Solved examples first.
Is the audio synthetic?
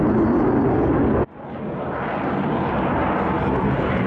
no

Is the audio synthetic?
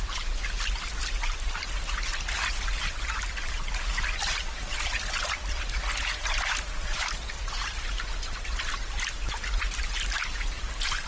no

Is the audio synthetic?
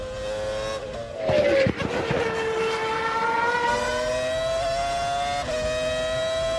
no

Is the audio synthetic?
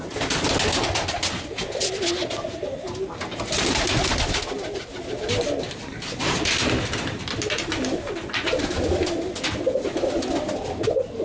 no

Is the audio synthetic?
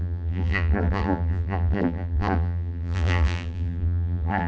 yes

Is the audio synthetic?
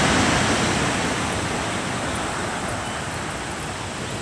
no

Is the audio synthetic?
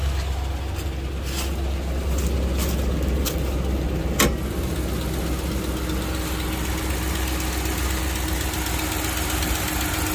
no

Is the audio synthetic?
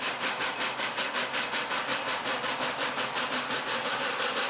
no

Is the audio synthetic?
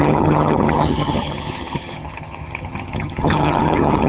yes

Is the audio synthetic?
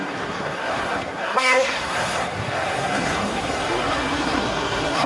yes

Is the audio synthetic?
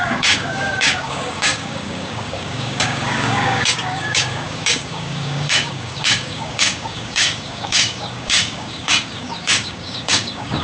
yes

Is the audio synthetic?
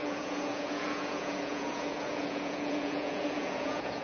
yes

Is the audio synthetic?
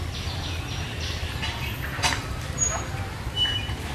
no